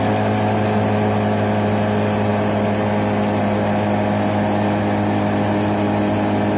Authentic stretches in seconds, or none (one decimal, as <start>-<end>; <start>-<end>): 0.0-6.6

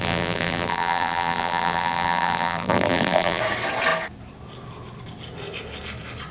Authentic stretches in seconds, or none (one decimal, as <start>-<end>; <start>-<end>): 3.4-6.3

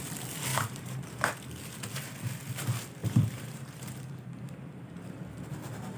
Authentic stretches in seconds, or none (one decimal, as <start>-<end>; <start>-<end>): 0.0-0.5; 1.3-3.0; 5.2-6.0

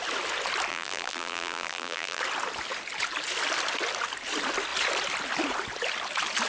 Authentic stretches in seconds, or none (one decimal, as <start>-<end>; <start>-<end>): 0.0-0.7; 2.2-6.5